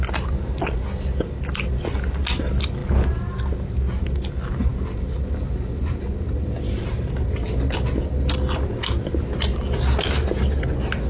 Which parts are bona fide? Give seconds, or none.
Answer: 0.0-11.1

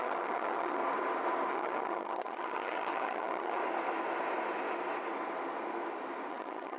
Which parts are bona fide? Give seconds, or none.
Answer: 0.8-1.5; 3.6-6.3

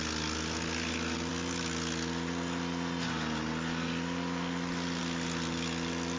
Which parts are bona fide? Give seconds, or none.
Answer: 0.0-6.2

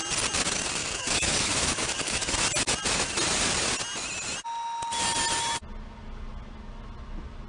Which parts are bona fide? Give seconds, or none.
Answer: 0.0-0.8; 2.3-7.5

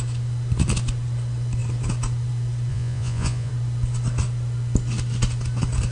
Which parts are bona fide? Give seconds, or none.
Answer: 0.0-2.7; 3.5-5.9

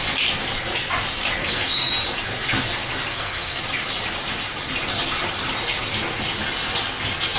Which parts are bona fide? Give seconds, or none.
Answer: 0.0-1.4; 1.9-3.1; 3.6-7.4

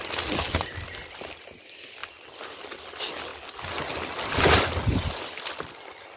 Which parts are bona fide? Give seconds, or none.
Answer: 0.0-6.2